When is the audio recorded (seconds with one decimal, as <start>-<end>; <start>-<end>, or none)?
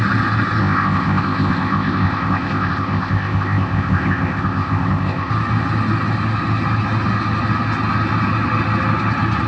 0.0-0.6; 5.3-9.5